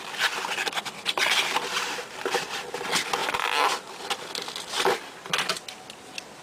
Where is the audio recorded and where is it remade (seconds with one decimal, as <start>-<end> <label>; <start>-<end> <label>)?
0.0-6.4 recorded